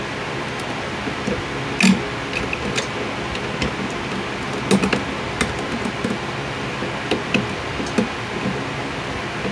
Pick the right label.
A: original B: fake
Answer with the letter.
A